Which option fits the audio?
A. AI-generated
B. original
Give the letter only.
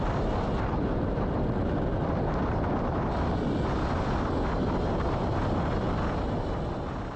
B